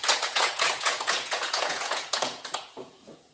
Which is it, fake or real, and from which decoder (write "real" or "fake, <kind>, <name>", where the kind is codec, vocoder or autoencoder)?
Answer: fake, vocoder, Vocos